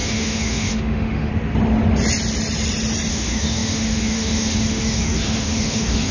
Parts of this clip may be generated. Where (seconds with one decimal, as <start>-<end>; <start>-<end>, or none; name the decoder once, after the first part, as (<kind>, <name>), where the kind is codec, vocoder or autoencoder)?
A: 0.0-1.3 (autoencoder, DAC-VAE); 3.1-6.1